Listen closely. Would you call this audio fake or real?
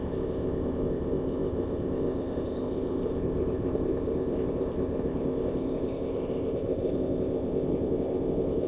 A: fake